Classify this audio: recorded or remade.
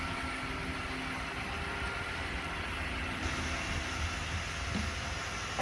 recorded